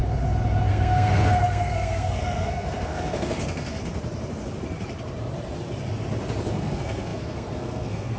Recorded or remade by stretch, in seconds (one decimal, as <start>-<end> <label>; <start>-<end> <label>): 0.0-0.7 recorded; 0.7-3.8 remade; 3.8-6.5 recorded; 6.5-8.2 remade